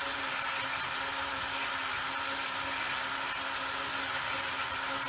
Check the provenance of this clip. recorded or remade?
recorded